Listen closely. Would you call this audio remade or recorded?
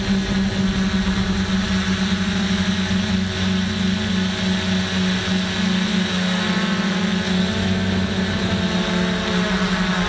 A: recorded